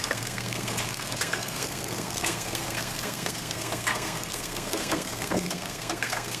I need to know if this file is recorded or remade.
remade